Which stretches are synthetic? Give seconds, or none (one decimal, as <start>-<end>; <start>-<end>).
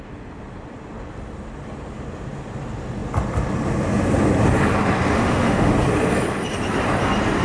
5.1-5.7